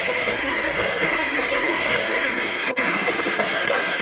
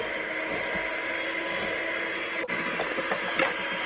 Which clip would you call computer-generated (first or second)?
first